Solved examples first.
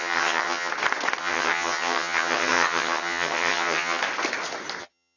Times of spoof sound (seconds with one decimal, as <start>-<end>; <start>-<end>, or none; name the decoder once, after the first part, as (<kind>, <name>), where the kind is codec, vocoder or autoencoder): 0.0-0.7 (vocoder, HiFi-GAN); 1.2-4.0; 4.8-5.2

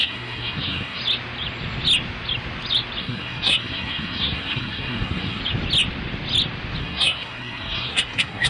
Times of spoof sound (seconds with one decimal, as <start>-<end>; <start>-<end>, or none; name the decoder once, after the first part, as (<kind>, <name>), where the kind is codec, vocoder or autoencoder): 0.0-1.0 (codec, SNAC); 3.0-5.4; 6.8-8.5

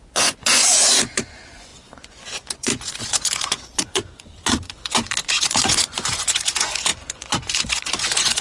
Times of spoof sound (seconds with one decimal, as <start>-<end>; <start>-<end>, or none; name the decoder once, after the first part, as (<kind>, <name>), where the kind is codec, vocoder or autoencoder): 0.0-8.4 (vocoder, Vocos)